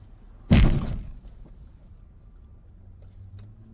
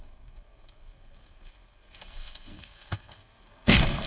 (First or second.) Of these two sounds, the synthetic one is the second